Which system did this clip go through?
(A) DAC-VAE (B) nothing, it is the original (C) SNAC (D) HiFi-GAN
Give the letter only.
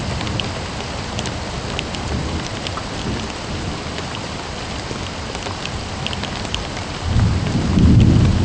B